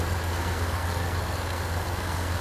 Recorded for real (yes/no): no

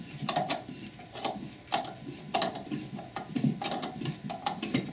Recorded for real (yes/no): yes